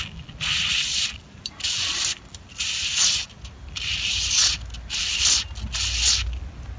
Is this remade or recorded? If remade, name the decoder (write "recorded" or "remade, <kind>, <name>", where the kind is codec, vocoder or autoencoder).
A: recorded